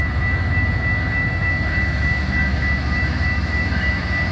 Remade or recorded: remade